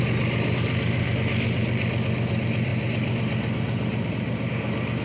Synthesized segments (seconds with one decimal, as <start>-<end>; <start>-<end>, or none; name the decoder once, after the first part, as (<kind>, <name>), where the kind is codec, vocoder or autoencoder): none